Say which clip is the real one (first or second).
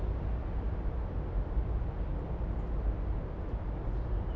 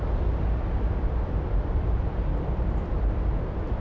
first